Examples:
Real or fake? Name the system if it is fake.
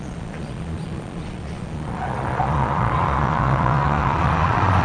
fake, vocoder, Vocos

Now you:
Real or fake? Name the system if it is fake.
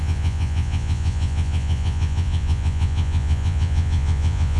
fake, vocoder, Vocos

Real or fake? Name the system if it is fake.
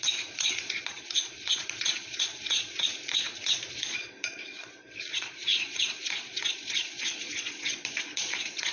fake, vocoder, Vocos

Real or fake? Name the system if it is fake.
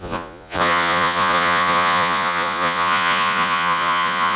fake, vocoder, Vocos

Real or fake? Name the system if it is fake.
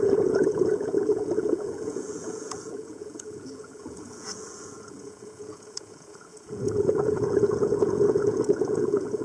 fake, vocoder, Vocos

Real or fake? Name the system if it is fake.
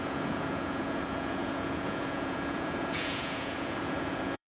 fake, vocoder, Vocos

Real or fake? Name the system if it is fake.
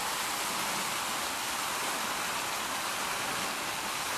real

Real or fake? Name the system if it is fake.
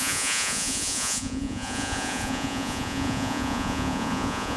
fake, vocoder, Vocos